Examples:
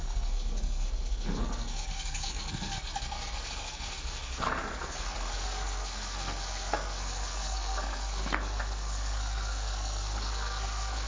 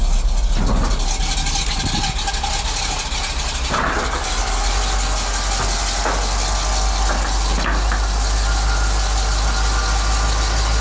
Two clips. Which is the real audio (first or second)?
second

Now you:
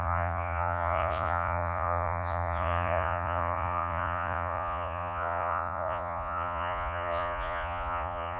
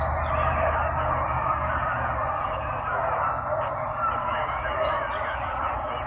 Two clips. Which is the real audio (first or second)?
second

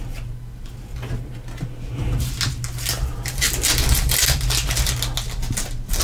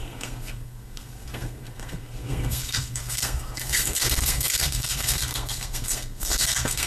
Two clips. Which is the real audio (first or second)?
first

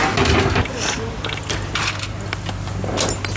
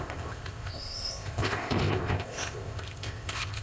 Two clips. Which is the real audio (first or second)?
first